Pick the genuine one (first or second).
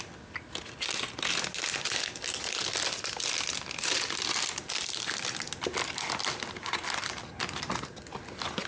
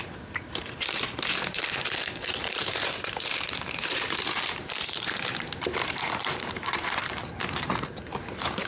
first